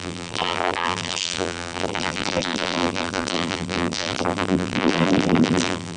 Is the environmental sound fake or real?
fake